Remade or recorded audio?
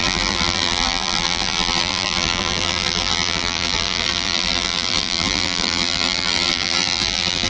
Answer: remade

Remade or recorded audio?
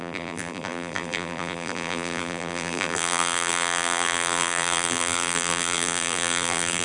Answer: remade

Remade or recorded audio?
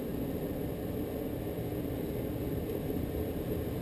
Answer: recorded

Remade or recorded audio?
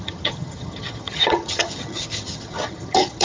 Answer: remade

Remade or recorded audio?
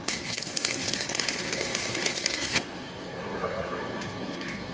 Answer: remade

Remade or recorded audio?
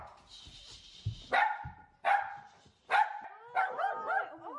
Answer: recorded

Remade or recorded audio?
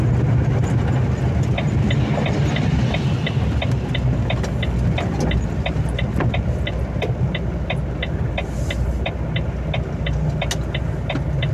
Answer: recorded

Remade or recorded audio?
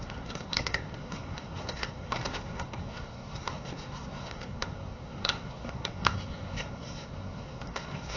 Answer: remade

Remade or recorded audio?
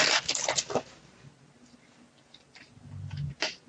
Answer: recorded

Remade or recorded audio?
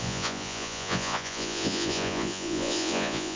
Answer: remade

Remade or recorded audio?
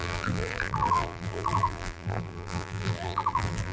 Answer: remade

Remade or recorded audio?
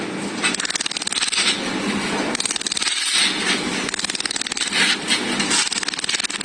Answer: recorded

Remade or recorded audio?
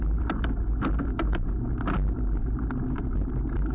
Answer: recorded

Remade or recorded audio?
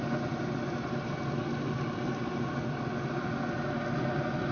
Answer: recorded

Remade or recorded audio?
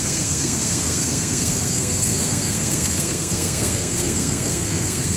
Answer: remade